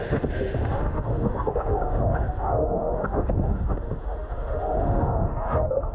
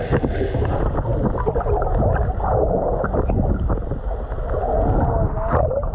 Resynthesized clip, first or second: first